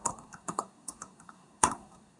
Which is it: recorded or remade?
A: remade